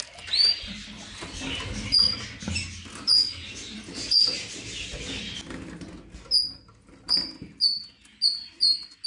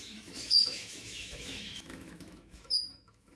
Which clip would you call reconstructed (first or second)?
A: second